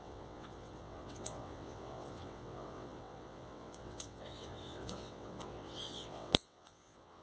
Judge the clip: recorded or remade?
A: remade